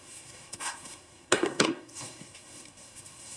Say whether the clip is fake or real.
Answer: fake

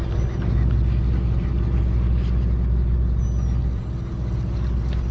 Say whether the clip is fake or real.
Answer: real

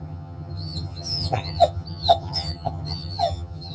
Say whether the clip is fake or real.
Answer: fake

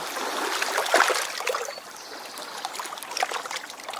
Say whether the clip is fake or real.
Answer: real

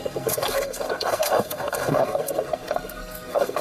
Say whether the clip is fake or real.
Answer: fake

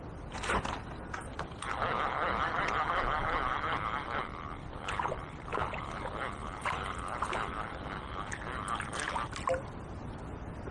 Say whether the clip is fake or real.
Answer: real